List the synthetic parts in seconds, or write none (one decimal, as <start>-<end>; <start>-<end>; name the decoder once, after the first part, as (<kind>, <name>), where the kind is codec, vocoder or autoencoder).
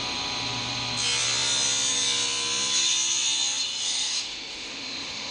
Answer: 3.8-5.3 (autoencoder, DAC-VAE)